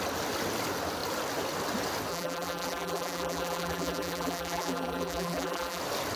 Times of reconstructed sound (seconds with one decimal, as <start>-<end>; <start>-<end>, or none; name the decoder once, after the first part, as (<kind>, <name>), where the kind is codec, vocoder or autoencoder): 2.1-5.8 (vocoder, BigVGAN v2)